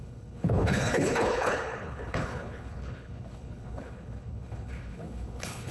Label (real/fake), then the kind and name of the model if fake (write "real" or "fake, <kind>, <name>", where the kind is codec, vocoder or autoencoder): fake, codec, HILCodec